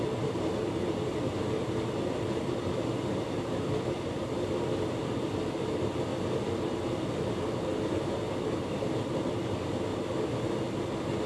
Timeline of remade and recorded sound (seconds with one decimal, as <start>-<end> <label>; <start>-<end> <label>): 0.0-11.3 recorded